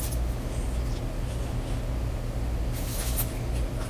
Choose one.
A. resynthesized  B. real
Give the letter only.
B